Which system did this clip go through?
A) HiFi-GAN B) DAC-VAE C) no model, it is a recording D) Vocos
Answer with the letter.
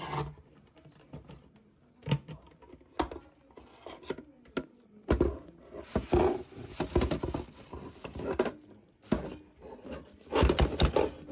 C